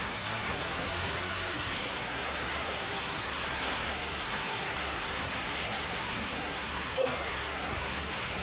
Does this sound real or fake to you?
fake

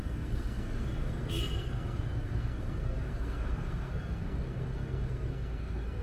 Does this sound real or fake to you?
fake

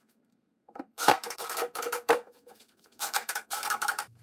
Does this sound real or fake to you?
fake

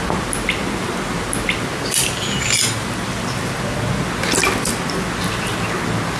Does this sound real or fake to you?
real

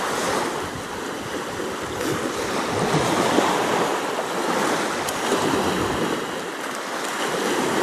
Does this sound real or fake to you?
real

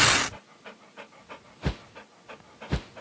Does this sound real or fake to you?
real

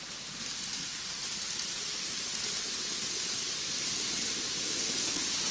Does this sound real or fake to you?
real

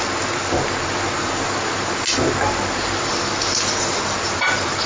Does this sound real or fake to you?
real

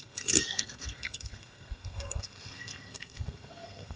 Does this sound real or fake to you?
fake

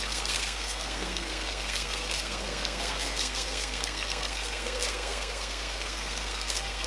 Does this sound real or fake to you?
fake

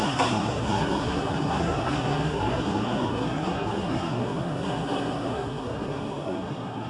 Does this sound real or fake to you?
fake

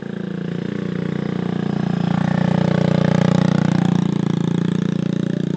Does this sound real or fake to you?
real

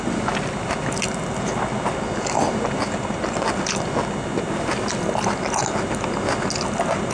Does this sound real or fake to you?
real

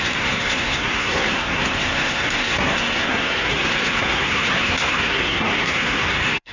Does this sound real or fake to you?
fake